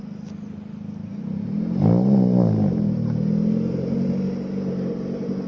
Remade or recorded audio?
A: recorded